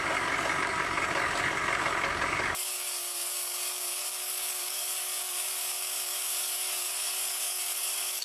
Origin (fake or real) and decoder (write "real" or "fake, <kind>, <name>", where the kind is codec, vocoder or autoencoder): fake, codec, DAC